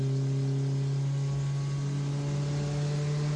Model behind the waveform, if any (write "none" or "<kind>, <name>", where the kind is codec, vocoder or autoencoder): none